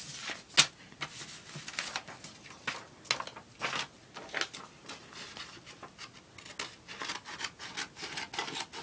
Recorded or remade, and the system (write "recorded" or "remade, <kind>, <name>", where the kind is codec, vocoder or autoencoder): recorded